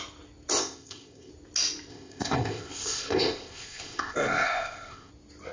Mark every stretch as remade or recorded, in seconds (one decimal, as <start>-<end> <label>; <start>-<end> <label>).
0.0-0.6 recorded; 0.6-1.3 remade; 1.3-1.9 recorded; 1.9-5.1 remade; 5.1-5.5 recorded